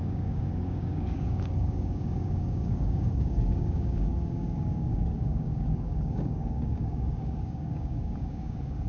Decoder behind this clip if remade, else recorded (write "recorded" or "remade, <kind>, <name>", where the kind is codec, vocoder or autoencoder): remade, codec, DAC